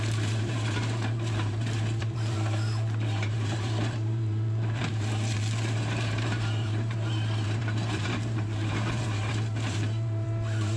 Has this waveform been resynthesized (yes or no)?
yes